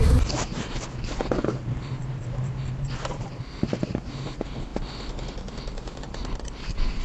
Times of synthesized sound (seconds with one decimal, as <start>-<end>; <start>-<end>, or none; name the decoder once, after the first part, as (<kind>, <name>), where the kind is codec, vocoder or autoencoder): 0.0-4.7 (vocoder, BigVGAN v2); 6.0-7.0